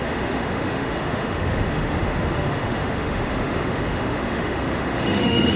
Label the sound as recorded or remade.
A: remade